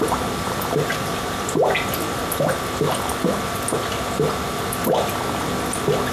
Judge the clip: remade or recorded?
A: recorded